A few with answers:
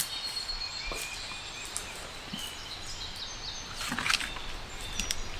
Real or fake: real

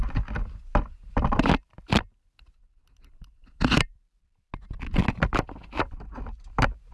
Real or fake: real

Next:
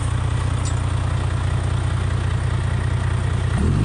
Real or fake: real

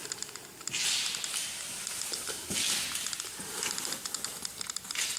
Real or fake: real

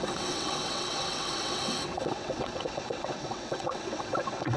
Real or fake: fake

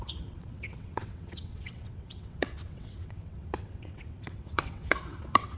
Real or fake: fake